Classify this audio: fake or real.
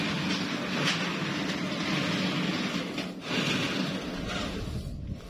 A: real